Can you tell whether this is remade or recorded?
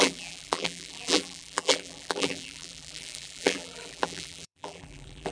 remade